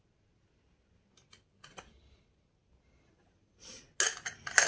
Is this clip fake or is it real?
real